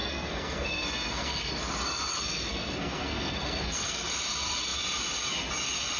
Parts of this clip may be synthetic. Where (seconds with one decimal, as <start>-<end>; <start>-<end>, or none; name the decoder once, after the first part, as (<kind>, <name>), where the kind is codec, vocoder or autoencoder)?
0.0-1.5 (codec, SNAC); 2.1-4.1